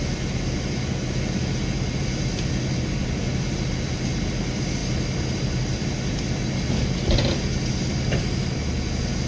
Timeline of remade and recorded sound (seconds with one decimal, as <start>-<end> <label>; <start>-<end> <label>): 0.0-9.3 recorded